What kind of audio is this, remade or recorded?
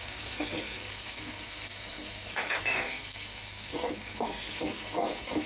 remade